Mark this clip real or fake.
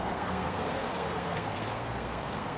fake